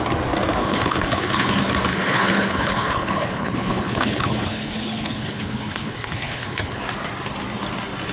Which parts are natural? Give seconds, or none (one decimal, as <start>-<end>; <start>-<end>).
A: 0.0-0.6; 1.5-1.9; 6.8-8.1